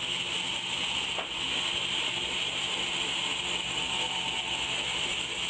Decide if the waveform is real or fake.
real